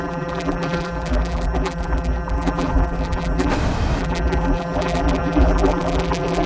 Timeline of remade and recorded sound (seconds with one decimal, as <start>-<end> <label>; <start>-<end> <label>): 0.0-3.5 remade; 3.5-4.0 recorded; 4.0-6.5 remade